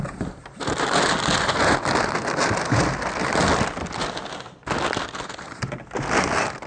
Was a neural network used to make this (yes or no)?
no